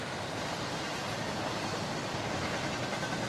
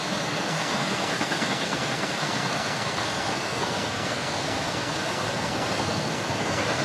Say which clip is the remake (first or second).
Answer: second